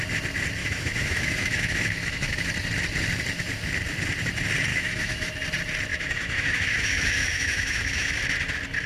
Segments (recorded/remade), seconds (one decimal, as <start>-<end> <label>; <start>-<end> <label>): 0.0-0.6 recorded; 0.6-2.5 remade; 2.5-4.7 recorded; 4.7-5.3 remade; 5.3-5.9 recorded; 5.9-8.2 remade; 8.2-8.9 recorded

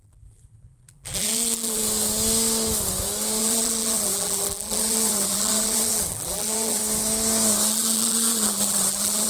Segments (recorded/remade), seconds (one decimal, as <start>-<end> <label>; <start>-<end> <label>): 0.0-1.8 remade; 1.8-3.4 recorded; 3.4-6.8 remade; 6.8-7.7 recorded; 7.7-9.3 remade